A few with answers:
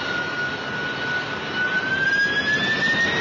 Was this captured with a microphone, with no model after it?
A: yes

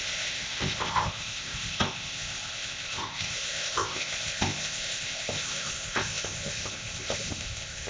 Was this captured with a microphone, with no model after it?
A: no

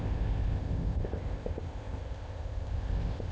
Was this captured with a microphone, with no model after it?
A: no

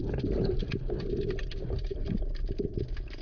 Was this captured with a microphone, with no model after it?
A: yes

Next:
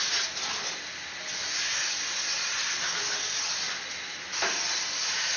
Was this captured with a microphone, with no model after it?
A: yes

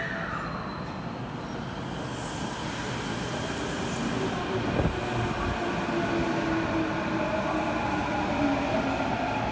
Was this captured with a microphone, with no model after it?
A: yes